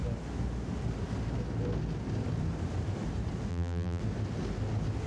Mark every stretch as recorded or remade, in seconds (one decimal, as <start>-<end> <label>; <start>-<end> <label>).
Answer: 0.0-3.5 recorded; 3.5-4.0 remade; 4.0-5.1 recorded